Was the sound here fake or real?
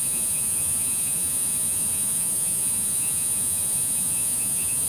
fake